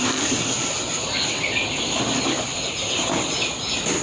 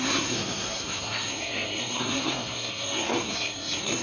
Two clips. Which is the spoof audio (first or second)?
second